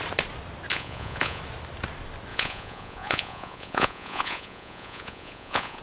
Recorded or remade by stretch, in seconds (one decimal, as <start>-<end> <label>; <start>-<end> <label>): 0.0-0.7 recorded; 0.7-1.4 remade; 1.4-2.3 recorded; 2.3-5.8 remade